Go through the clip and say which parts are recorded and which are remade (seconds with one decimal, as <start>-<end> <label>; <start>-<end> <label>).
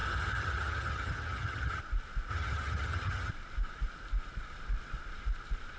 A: 0.0-1.8 remade; 1.8-2.3 recorded; 2.3-3.3 remade; 3.3-5.8 recorded